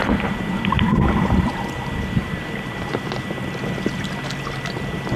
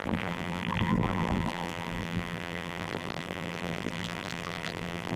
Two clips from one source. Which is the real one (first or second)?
first